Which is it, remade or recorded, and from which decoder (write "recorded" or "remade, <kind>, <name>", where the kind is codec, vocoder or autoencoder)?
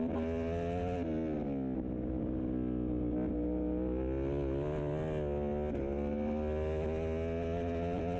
recorded